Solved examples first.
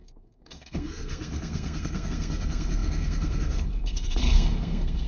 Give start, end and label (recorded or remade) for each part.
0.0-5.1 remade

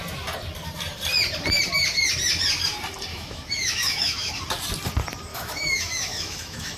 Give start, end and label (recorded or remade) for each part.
0.0-3.1 recorded; 3.1-4.3 remade; 4.3-5.3 recorded; 5.3-6.8 remade

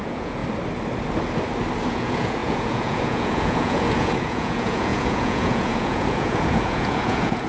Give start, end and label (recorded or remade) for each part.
0.0-0.4 remade; 0.4-1.9 recorded; 1.9-7.5 remade

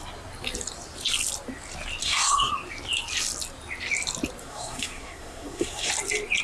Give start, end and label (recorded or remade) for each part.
0.0-2.0 recorded; 2.0-2.5 remade; 2.5-4.4 recorded; 4.4-5.9 remade; 5.9-6.4 recorded